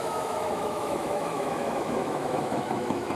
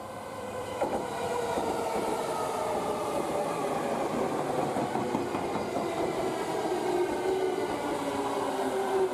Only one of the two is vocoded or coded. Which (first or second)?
first